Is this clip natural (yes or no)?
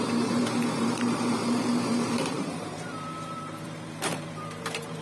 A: no